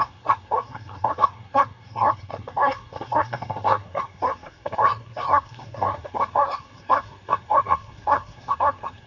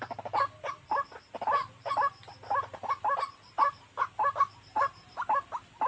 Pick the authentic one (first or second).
second